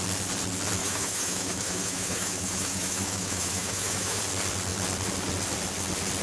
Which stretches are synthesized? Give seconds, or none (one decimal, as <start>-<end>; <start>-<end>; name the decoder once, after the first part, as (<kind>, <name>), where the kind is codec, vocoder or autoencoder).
0.8-4.2 (autoencoder, DAC-VAE)